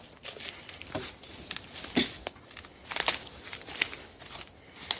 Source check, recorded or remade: recorded